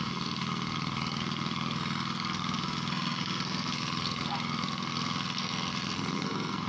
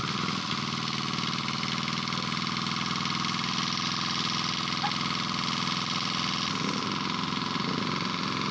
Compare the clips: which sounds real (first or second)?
second